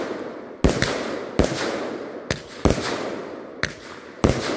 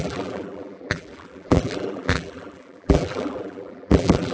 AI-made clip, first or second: second